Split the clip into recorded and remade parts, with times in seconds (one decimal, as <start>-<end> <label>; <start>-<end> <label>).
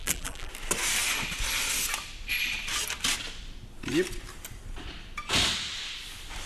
0.0-0.5 remade; 0.5-6.5 recorded